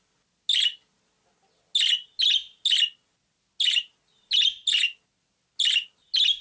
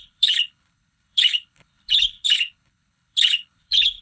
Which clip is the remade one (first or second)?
second